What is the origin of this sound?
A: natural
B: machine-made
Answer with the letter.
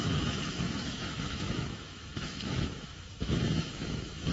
B